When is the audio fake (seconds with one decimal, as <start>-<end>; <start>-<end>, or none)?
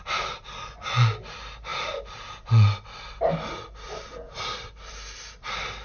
none